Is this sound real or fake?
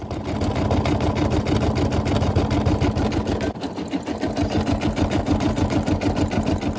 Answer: real